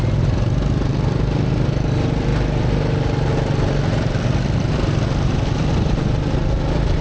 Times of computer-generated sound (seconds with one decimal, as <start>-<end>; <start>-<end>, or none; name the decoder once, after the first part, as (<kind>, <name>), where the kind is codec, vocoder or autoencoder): none

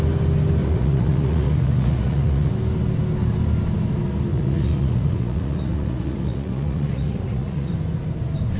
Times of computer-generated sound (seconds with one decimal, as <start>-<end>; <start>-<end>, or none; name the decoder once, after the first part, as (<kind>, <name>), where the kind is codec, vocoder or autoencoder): 0.6-2.5 (vocoder, Vocos); 4.3-7.7

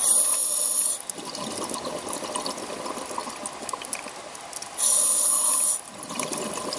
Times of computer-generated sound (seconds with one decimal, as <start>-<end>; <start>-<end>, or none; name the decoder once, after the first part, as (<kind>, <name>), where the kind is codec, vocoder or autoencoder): none

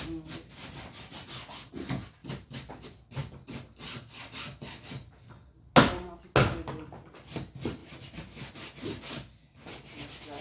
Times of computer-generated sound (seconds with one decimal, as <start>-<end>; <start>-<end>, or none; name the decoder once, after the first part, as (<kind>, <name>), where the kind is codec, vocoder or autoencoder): none

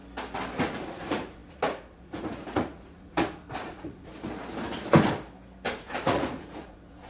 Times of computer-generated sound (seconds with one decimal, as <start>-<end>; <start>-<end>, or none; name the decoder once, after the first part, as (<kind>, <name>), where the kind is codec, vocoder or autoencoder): 0.6-4.1 (vocoder, Vocos); 5.7-7.1

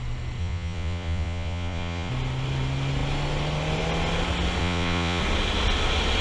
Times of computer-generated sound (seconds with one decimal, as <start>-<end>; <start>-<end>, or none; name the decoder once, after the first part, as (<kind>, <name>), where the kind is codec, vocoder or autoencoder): 0.4-2.1 (vocoder, Vocos); 4.6-5.2